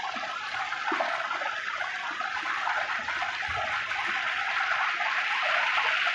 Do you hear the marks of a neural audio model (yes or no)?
no